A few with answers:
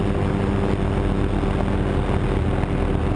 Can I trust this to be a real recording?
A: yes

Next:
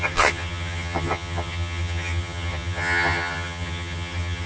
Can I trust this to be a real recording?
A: no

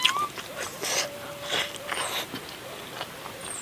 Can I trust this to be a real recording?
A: yes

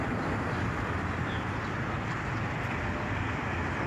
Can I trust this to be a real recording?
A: yes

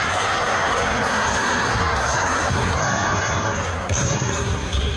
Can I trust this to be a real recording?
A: no